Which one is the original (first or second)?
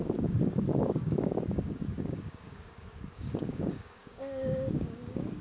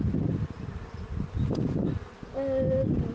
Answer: second